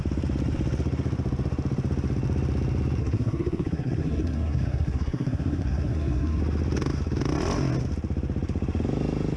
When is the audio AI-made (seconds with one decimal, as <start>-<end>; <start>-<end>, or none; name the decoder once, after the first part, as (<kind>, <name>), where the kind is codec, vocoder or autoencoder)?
3.0-6.4 (codec, SNAC)